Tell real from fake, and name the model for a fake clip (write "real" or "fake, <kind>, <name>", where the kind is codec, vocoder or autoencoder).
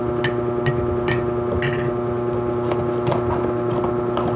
real